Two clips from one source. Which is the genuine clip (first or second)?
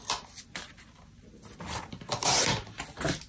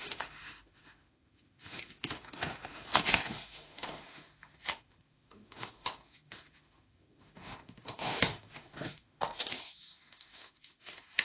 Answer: first